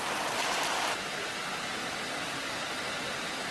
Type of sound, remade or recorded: recorded